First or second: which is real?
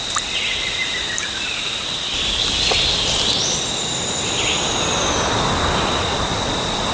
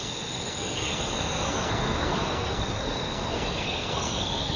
first